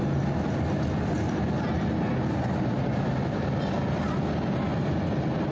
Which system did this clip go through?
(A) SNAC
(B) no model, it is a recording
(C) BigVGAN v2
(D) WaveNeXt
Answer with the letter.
B